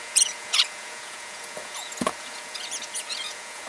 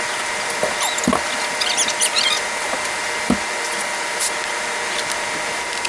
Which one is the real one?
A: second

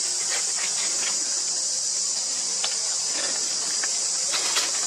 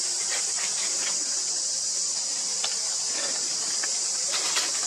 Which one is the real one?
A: first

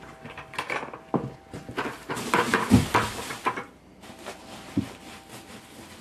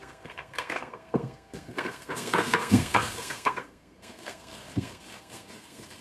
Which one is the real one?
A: first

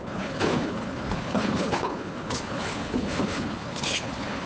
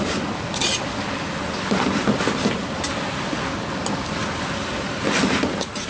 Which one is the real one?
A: second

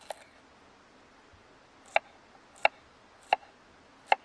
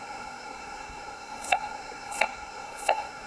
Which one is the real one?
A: first